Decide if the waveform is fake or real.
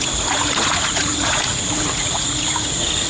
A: fake